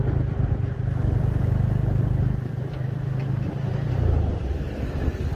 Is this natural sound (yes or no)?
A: no